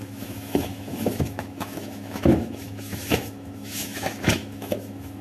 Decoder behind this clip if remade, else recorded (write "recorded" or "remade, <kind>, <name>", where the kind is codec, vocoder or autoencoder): remade, autoencoder, DAC-VAE